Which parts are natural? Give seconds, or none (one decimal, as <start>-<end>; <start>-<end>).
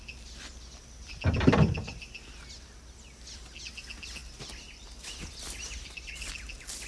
0.0-6.9